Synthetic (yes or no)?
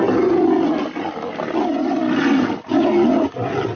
no